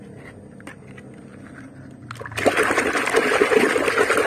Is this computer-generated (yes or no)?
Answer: no